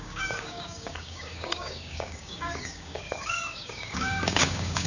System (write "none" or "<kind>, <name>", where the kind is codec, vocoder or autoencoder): codec, DAC